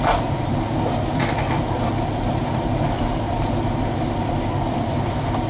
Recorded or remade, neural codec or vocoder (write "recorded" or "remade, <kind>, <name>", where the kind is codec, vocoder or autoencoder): remade, vocoder, BigVGAN v2